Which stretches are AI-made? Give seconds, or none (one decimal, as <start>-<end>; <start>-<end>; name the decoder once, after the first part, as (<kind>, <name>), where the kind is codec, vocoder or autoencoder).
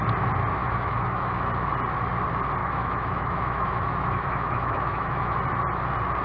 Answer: 0.6-1.4 (autoencoder, DAC-VAE); 2.6-5.4